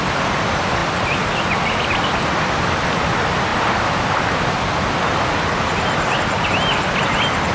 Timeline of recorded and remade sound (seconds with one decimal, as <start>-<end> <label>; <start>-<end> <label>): 0.0-7.5 recorded